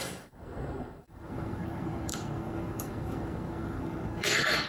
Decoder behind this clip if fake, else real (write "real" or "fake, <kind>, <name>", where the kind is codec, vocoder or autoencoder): fake, codec, SNAC